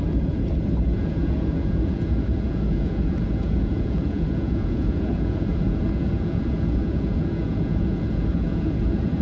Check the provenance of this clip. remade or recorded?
remade